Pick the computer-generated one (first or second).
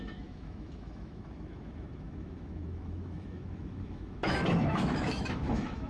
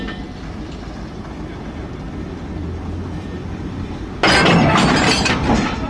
first